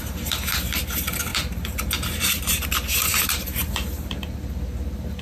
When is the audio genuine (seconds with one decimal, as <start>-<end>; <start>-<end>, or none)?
0.0-1.3; 4.4-5.2